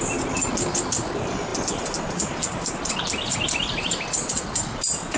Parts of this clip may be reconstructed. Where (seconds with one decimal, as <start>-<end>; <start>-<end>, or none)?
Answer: none